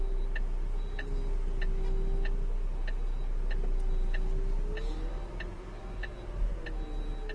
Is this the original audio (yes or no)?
yes